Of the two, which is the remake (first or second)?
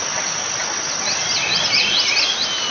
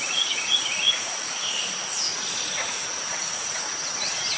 second